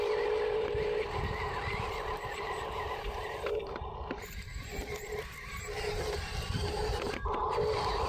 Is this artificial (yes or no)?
yes